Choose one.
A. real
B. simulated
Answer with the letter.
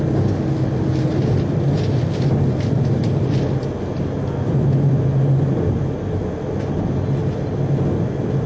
A